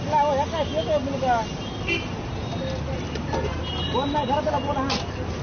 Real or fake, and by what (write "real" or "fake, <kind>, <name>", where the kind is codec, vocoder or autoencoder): real